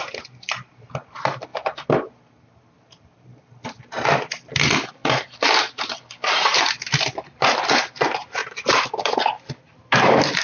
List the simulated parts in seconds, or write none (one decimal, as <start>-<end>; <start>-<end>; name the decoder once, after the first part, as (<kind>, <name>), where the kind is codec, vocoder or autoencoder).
0.0-1.5 (vocoder, BigVGAN v2); 2.9-8.4; 9.6-10.4